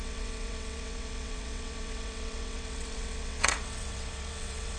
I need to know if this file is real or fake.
fake